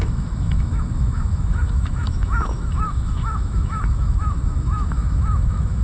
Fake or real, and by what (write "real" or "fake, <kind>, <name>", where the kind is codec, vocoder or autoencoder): fake, autoencoder, DAC-VAE